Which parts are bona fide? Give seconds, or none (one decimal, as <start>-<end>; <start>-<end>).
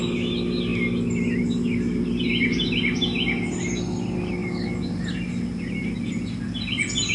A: 0.0-7.1